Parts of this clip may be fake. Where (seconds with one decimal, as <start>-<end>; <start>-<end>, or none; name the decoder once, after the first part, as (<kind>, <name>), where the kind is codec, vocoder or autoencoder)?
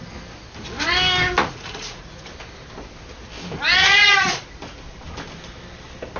1.4-2.3 (vocoder, Vocos); 3.8-4.5